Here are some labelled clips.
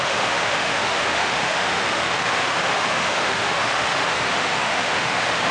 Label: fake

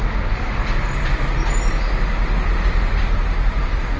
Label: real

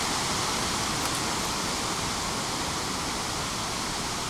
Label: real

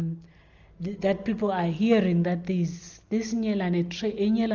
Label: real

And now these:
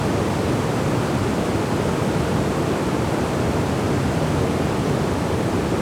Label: real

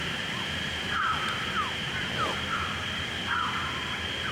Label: real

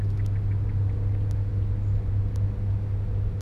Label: real